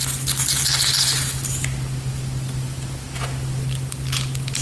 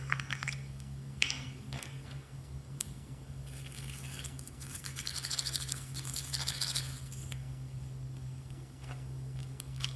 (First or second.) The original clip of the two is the first